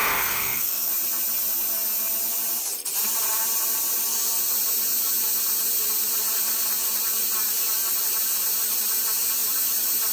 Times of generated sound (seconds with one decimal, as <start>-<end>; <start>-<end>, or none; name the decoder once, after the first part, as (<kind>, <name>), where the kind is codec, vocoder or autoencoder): 0.0-0.9 (codec, SNAC)